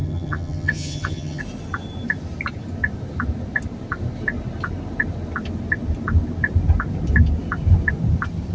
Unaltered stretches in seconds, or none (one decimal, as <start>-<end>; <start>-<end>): 1.4-8.5